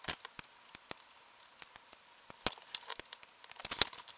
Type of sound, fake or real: real